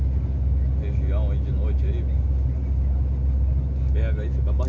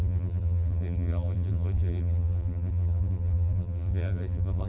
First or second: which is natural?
first